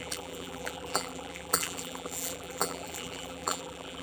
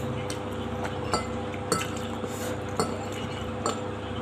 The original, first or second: second